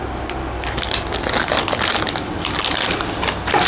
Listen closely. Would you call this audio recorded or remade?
recorded